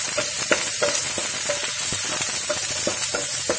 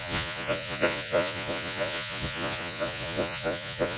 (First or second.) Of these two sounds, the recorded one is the first